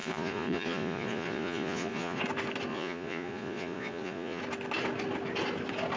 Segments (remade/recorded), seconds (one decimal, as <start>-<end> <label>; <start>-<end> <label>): 0.0-2.2 remade; 2.2-2.7 recorded; 2.7-4.4 remade; 4.4-6.0 recorded